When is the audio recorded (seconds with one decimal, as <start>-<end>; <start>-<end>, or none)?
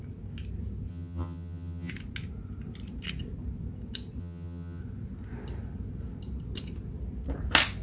0.0-0.9; 1.9-4.2; 4.8-7.8